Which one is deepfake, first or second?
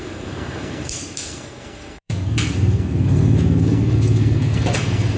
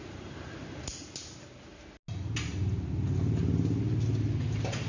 first